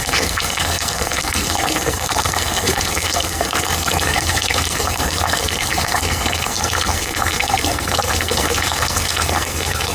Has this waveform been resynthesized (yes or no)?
yes